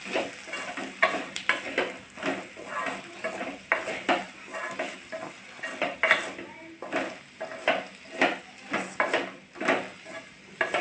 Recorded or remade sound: recorded